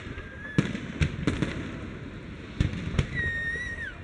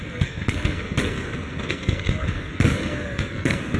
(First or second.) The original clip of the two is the first